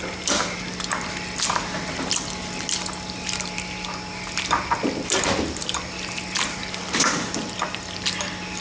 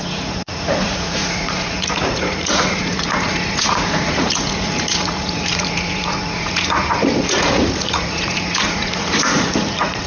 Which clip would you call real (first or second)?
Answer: first